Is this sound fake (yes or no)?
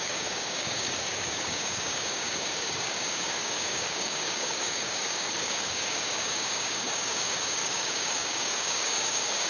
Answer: yes